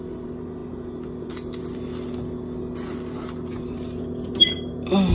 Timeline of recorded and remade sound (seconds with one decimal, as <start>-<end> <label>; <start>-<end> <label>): 0.0-5.1 recorded